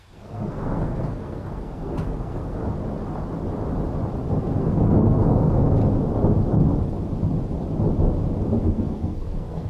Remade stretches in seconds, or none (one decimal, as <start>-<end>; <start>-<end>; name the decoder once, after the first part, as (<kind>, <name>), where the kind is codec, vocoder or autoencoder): 0.0-2.6 (codec, SNAC); 4.4-5.8; 8.6-9.7